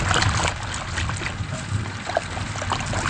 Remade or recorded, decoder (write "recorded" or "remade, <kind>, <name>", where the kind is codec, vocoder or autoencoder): recorded